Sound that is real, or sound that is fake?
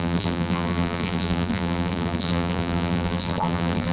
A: fake